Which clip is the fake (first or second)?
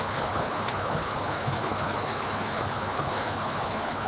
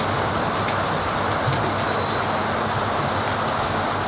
first